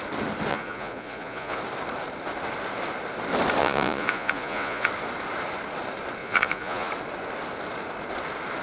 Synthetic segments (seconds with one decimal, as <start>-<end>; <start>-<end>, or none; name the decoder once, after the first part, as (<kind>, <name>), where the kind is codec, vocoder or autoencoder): 0.5-1.6 (vocoder, Vocos); 3.6-4.9; 6.2-6.9